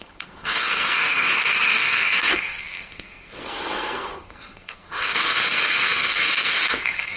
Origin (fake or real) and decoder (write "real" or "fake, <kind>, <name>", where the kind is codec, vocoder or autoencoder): fake, codec, SNAC